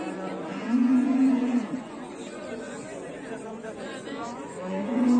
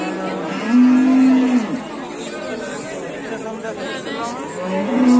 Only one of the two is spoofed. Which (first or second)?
first